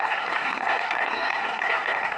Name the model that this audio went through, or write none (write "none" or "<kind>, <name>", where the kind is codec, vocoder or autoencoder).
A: codec, SNAC